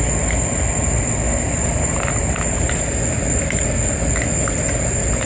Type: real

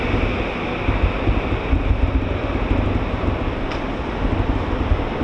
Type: real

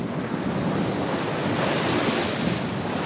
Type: real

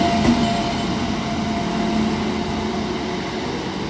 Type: real